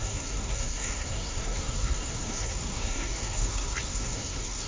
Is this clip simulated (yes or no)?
yes